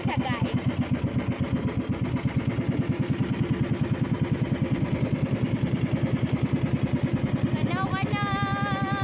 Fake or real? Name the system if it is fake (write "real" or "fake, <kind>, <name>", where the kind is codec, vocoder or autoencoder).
real